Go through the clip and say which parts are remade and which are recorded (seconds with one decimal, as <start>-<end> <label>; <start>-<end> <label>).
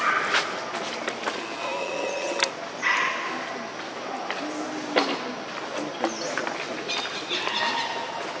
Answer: 0.0-1.8 recorded; 1.8-2.4 remade; 2.4-8.4 recorded